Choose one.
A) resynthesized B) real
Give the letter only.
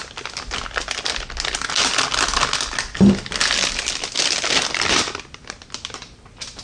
B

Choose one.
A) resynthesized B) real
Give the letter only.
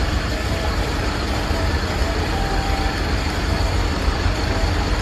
A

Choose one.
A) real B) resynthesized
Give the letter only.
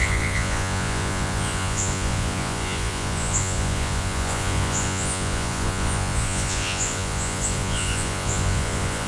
B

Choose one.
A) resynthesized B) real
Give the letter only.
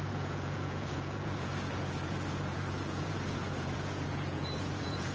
A